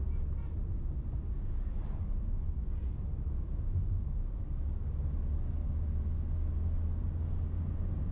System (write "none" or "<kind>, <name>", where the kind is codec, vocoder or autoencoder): none